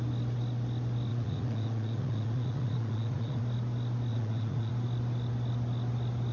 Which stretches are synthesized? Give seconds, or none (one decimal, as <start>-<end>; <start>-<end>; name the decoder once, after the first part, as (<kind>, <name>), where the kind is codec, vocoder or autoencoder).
1.1-3.4 (vocoder, Vocos); 4.1-4.7